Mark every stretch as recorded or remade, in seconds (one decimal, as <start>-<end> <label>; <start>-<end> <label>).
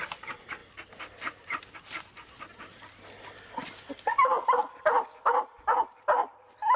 0.0-6.8 recorded